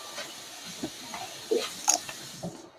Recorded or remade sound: recorded